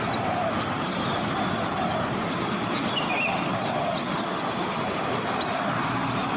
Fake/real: real